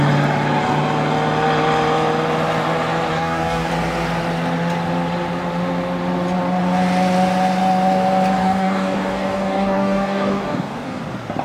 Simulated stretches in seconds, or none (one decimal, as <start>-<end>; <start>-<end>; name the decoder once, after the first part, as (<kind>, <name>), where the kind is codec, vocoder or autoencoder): 3.1-3.7 (codec, DAC); 8.4-11.0